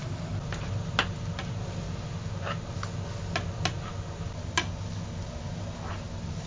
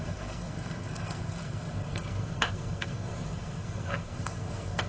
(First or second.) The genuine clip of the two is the first